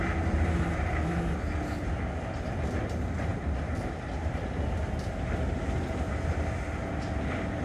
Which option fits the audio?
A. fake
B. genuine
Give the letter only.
B